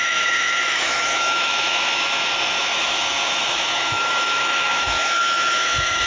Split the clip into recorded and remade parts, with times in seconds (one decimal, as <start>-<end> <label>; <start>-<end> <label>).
0.0-6.1 remade